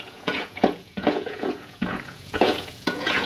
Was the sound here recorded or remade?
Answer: remade